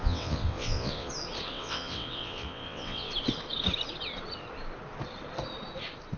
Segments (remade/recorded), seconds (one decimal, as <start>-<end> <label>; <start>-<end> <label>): 0.0-1.1 remade; 1.1-1.5 recorded; 1.5-3.1 remade; 3.1-6.2 recorded